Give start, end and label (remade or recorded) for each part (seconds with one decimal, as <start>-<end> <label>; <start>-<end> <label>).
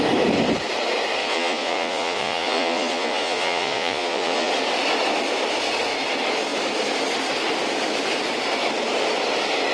0.0-1.2 recorded; 1.2-4.5 remade; 4.5-9.7 recorded